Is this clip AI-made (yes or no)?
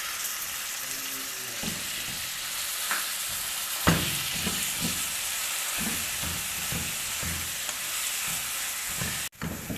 no